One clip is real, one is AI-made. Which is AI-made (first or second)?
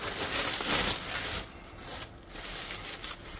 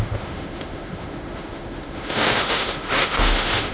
second